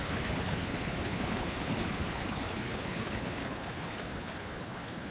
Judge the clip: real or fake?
fake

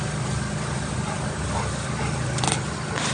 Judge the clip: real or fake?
real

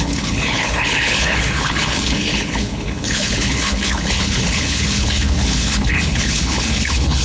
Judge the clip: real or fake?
fake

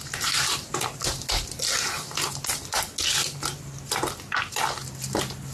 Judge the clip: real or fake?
real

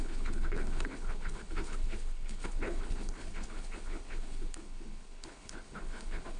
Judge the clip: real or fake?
fake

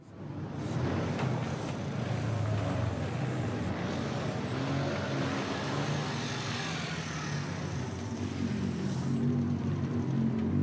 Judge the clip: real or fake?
real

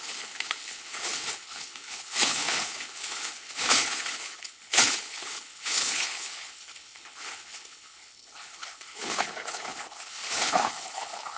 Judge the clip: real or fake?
fake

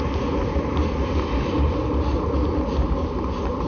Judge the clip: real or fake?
real